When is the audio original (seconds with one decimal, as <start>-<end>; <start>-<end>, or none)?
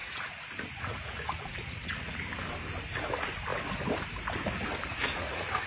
2.2-4.9